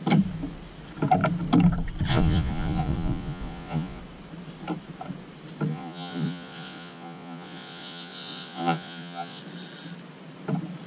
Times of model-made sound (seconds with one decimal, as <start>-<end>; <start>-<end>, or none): 2.1-4.0; 5.7-9.4